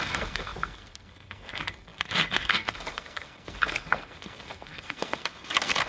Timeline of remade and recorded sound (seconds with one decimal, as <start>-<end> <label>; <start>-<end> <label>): 0.0-5.9 remade